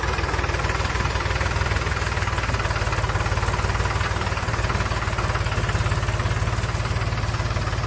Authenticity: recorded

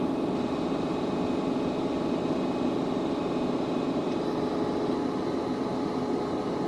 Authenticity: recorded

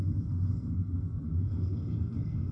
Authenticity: remade